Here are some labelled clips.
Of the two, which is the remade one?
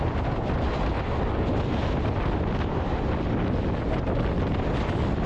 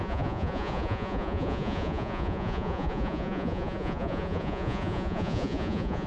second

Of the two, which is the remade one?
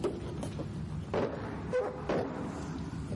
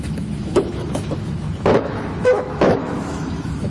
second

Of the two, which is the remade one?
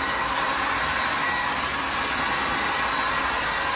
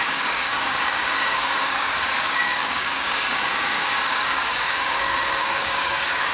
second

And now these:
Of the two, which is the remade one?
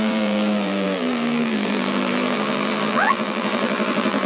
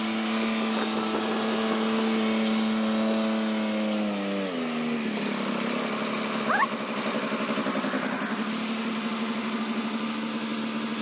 first